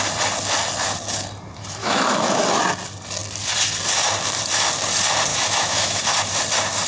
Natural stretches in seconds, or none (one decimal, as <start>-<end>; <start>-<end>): 0.0-1.8; 2.4-5.3; 6.0-6.9